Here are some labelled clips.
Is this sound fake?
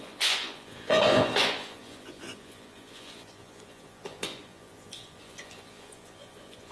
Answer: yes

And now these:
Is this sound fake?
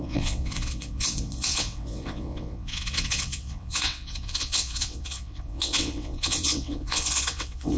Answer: yes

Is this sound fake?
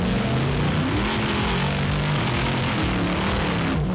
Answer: no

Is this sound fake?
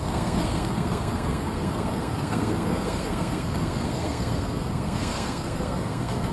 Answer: yes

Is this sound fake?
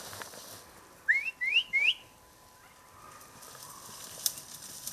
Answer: no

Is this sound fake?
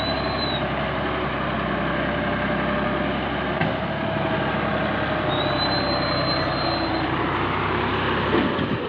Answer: no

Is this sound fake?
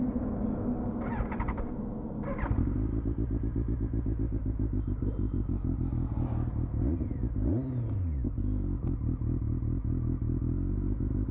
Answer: no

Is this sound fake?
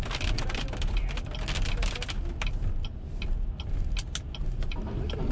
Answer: no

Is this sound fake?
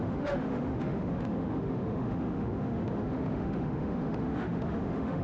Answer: yes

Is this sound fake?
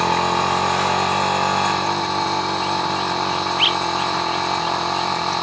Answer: no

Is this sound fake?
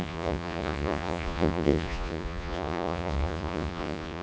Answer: yes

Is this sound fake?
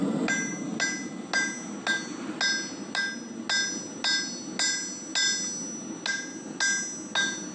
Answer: no